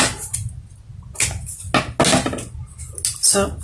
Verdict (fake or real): real